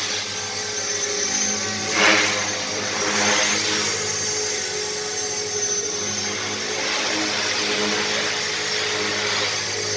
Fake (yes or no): no